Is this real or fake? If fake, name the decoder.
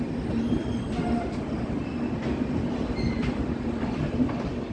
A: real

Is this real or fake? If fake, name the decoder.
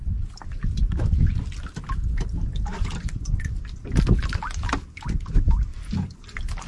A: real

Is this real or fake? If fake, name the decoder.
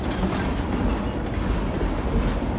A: real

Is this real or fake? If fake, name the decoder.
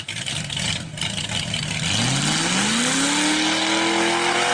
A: real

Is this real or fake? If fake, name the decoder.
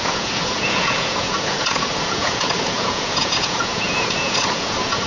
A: fake, vocoder, Vocos